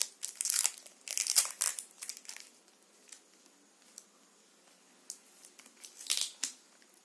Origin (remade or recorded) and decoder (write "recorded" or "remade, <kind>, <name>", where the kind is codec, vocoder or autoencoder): recorded